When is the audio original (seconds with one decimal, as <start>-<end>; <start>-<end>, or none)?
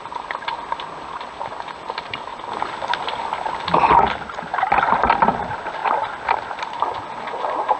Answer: 0.0-7.8